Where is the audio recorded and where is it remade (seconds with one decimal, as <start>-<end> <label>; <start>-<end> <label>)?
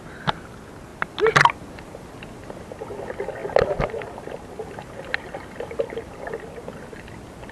0.0-7.5 recorded